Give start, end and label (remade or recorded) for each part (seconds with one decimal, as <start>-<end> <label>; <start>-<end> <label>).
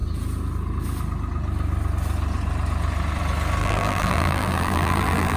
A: 0.0-3.6 recorded; 3.6-5.4 remade